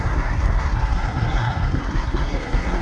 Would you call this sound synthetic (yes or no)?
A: yes